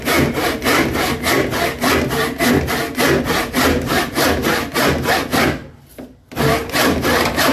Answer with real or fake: real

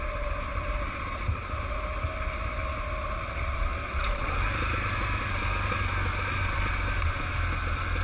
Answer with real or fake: real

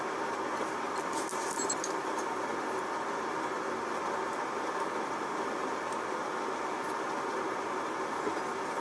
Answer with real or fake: real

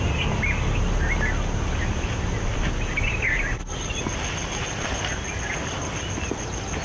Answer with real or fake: real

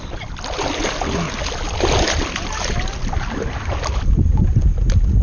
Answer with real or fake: real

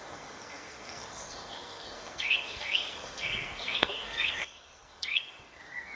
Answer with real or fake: fake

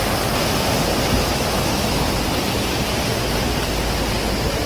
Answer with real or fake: real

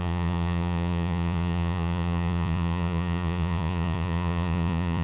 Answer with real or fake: fake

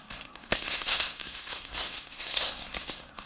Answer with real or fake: fake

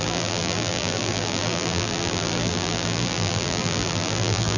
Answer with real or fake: fake